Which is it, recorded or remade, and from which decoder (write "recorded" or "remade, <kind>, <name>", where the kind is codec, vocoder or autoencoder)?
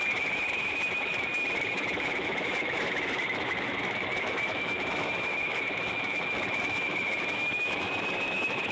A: remade, autoencoder, DAC-VAE